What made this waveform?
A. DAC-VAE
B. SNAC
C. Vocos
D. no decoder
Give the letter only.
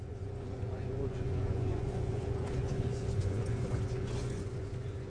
C